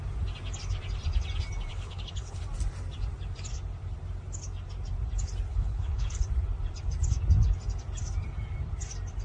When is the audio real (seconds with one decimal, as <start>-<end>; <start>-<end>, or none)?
0.0-1.7; 2.4-5.5; 6.2-9.2